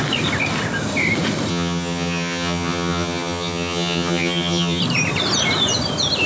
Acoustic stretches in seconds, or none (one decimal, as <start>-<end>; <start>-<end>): 0.0-1.5; 4.8-6.3